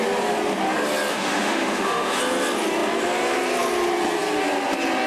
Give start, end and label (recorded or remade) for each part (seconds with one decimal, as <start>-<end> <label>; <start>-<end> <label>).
0.0-1.1 recorded; 1.1-2.2 remade; 2.2-5.1 recorded